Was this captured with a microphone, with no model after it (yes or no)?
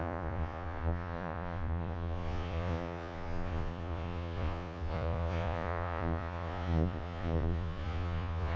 no